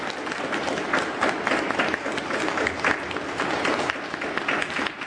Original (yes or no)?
yes